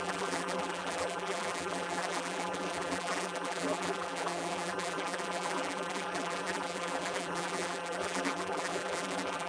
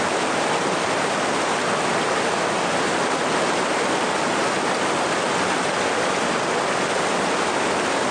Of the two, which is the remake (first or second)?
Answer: first